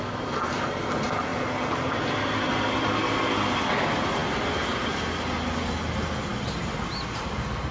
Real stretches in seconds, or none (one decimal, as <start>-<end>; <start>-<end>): 0.0-7.7